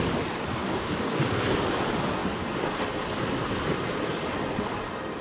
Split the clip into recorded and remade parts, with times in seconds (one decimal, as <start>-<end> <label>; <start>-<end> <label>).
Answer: 0.0-0.5 recorded; 0.5-1.2 remade; 1.2-5.2 recorded